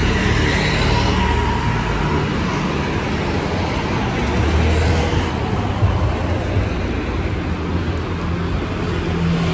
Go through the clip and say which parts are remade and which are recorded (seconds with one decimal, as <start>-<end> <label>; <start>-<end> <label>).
0.0-9.5 recorded